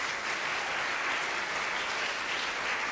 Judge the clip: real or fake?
real